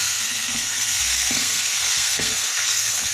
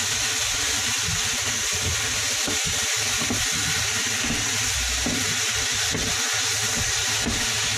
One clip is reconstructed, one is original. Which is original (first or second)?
second